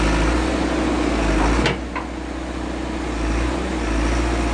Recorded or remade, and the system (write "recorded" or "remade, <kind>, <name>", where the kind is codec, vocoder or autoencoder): recorded